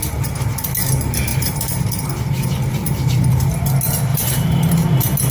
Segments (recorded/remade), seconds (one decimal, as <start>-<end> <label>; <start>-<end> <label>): 0.0-1.3 recorded; 1.3-1.8 remade; 1.8-2.8 recorded; 2.8-3.6 remade; 3.6-4.1 recorded; 4.1-4.7 remade; 4.7-5.3 recorded